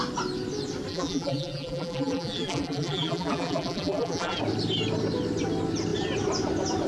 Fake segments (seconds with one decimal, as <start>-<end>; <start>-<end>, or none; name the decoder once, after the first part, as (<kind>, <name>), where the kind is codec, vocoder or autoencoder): 0.9-4.4 (vocoder, BigVGAN v2)